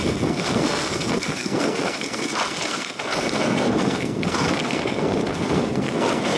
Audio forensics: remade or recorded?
remade